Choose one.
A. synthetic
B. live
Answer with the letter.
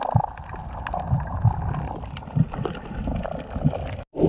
B